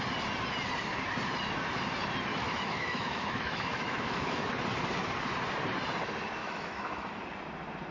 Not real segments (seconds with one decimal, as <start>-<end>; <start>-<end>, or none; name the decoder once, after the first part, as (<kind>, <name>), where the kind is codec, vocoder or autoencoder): 2.3-4.5 (autoencoder, DAC-VAE); 6.4-7.2